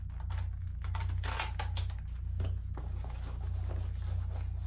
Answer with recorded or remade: recorded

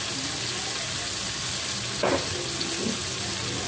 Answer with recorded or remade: recorded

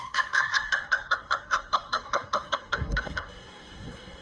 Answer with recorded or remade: remade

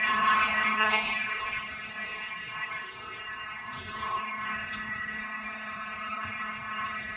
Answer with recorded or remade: remade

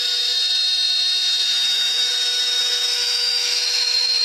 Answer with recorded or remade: remade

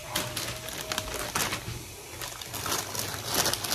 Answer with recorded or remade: recorded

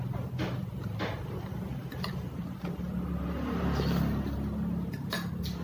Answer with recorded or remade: recorded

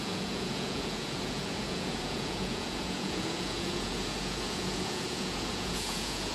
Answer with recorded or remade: remade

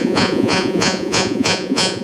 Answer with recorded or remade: remade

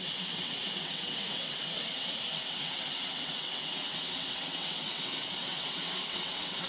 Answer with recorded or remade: remade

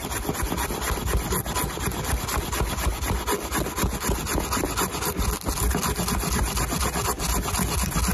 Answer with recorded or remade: recorded